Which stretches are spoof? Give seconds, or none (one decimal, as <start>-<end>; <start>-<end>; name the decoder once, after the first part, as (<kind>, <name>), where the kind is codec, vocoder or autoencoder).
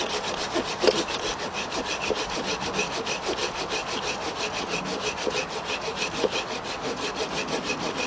none